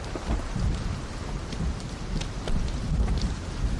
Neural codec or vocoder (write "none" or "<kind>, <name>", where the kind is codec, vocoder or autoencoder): vocoder, BigVGAN v2